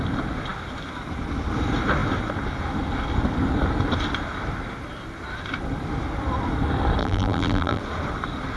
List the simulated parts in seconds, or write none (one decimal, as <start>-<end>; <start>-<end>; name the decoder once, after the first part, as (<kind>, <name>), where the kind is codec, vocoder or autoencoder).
7.0-7.8 (vocoder, BigVGAN v2)

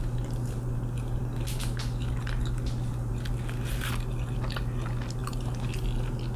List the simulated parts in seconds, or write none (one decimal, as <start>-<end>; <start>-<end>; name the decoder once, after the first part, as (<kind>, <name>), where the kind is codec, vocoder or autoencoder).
5.2-5.7 (vocoder, BigVGAN v2)

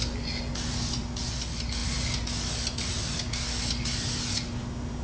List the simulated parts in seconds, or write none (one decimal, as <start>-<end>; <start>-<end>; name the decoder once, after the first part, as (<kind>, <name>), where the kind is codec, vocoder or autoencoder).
none

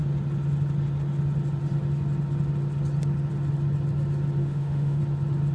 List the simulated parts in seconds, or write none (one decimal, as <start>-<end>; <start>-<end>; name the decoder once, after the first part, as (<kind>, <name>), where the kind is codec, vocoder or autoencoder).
4.4-5.0 (autoencoder, DAC-VAE)

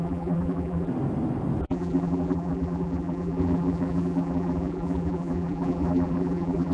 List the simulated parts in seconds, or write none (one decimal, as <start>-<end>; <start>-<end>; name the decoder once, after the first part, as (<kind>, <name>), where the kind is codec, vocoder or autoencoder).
0.0-0.9 (vocoder, BigVGAN v2); 1.6-6.7

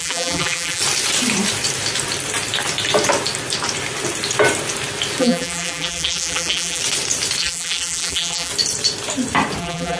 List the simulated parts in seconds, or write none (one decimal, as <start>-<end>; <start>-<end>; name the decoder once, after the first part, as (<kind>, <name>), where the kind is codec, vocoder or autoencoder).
0.0-0.8 (vocoder, BigVGAN v2); 5.2-6.8; 7.4-8.5; 9.6-10.0

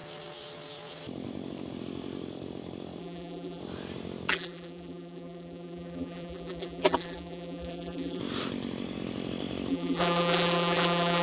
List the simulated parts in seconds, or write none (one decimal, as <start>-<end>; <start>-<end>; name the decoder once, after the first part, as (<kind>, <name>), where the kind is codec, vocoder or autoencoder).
3.0-3.6 (vocoder, BigVGAN v2); 4.3-8.2; 9.7-11.2